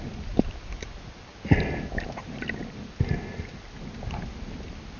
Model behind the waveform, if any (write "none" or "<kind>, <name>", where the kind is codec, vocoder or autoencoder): none